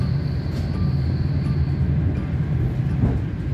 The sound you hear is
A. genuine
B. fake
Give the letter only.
A